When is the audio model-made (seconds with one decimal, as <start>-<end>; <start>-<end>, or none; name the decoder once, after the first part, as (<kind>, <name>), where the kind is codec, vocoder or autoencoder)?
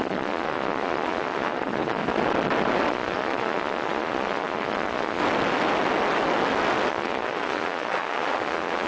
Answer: 0.0-2.0 (vocoder, Vocos); 2.9-5.2; 6.9-8.9